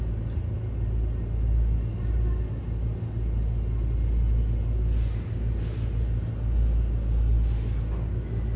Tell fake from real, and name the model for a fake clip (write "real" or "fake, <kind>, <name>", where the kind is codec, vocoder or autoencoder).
real